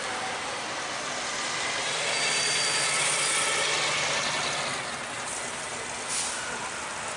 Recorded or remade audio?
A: recorded